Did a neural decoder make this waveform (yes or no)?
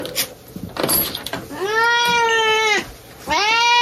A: no